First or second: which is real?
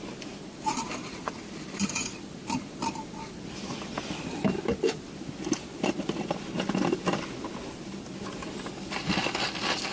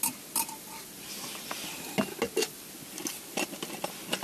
second